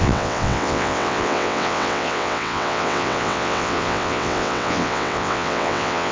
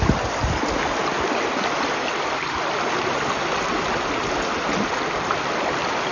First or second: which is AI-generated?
first